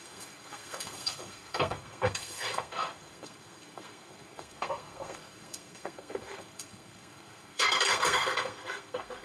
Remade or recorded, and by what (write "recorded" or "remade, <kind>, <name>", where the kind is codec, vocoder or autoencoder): remade, codec, SNAC